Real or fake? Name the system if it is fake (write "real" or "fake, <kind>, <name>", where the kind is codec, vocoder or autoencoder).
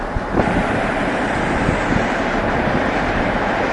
fake, vocoder, BigVGAN v2